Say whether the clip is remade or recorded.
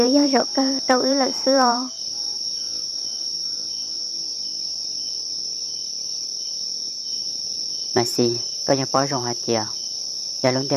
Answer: remade